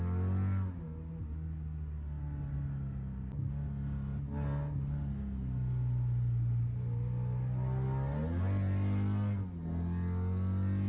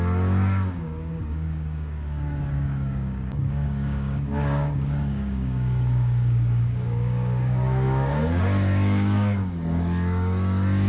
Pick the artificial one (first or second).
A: second